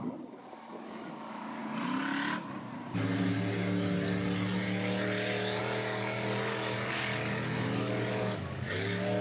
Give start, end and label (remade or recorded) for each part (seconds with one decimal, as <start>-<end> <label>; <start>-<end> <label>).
0.0-1.6 remade; 1.6-5.6 recorded; 5.6-7.1 remade; 7.1-7.6 recorded; 7.6-9.2 remade